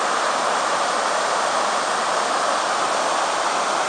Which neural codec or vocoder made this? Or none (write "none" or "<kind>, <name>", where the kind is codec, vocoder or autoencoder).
none